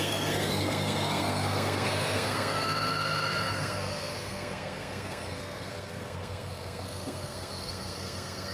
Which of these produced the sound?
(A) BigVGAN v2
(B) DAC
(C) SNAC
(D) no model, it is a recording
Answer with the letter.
C